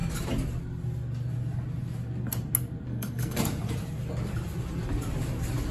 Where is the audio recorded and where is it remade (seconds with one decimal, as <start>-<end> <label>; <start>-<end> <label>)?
0.0-2.9 recorded; 2.9-3.4 remade; 3.4-5.7 recorded